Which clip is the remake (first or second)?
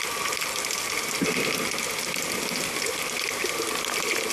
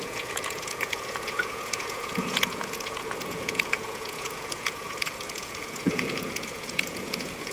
second